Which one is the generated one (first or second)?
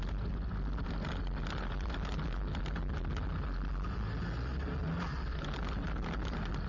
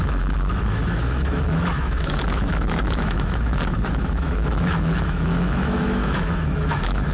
second